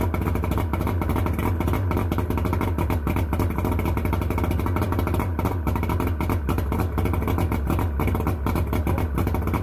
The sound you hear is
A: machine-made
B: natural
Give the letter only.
B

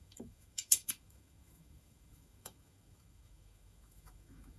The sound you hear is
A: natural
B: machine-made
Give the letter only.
B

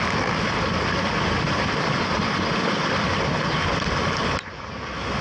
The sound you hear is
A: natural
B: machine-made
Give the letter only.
A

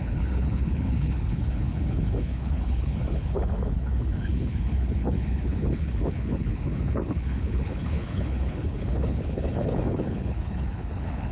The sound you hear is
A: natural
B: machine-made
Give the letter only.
B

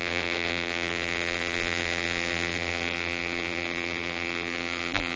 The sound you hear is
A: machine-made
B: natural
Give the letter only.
A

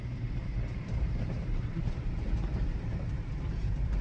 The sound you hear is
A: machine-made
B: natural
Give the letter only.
A